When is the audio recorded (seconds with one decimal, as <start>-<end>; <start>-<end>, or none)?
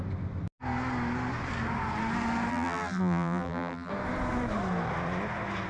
0.0-2.5; 3.9-5.7